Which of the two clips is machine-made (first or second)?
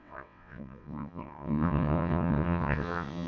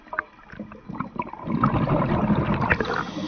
first